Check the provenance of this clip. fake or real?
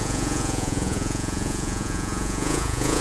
fake